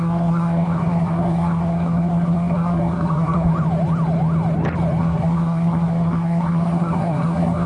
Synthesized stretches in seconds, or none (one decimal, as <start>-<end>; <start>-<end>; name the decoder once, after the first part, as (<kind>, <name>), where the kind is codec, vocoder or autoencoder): 0.0-3.5 (codec, SNAC); 5.0-7.7